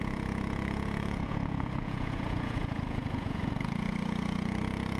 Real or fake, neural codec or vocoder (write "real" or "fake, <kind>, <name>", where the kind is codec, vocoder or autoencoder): fake, vocoder, Vocos